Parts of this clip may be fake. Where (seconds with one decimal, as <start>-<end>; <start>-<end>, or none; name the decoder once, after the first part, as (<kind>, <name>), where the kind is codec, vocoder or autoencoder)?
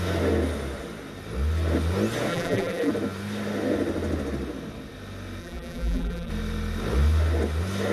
2.3-2.9 (vocoder, BigVGAN v2); 5.4-6.3